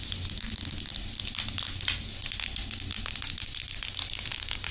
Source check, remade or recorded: recorded